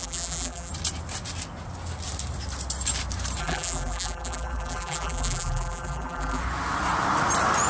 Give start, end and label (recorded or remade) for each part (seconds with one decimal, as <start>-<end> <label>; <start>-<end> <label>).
0.0-0.7 remade; 0.7-3.4 recorded; 3.4-6.4 remade; 6.4-7.7 recorded